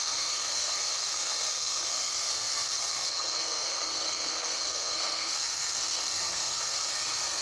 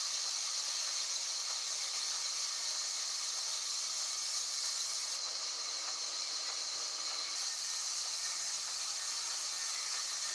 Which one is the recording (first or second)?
second